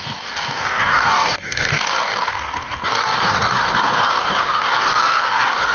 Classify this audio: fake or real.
fake